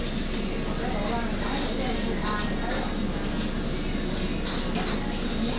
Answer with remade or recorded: recorded